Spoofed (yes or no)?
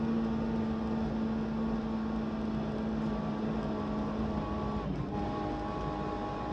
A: no